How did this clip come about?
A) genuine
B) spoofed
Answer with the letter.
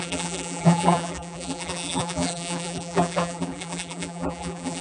B